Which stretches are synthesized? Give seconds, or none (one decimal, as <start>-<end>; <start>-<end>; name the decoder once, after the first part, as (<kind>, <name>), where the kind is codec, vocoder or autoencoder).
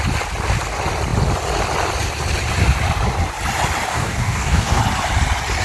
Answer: 3.9-4.8 (codec, DAC)